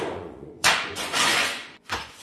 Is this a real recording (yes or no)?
no